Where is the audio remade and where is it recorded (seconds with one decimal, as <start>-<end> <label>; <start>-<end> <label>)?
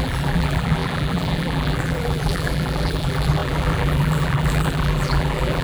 0.0-5.6 remade